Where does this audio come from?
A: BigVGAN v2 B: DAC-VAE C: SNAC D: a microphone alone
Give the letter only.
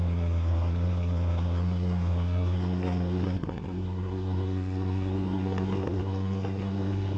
C